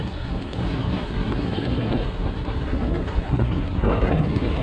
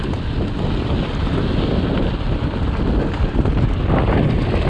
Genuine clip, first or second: second